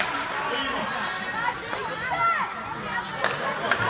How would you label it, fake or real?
real